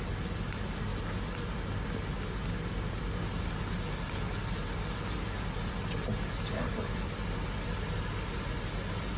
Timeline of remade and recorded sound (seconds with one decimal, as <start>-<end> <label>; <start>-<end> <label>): 0.0-9.2 recorded